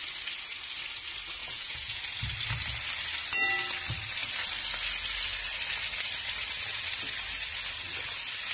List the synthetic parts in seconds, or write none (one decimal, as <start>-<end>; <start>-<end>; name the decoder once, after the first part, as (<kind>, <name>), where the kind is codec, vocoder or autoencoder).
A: 1.4-2.0 (vocoder, Vocos)